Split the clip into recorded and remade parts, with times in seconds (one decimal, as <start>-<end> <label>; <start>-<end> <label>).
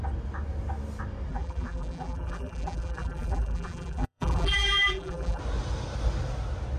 0.0-1.3 recorded; 1.3-5.4 remade; 5.4-6.8 recorded